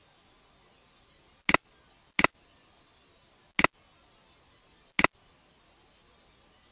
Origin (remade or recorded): recorded